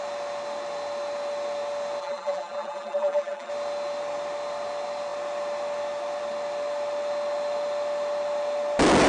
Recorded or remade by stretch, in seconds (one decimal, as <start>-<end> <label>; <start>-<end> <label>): 0.0-2.0 recorded; 2.0-3.5 remade; 3.5-9.1 recorded